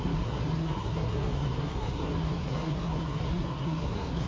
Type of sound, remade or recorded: remade